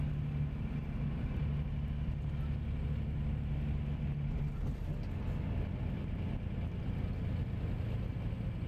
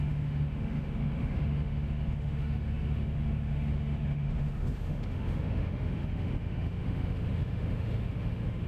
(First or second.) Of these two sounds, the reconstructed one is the second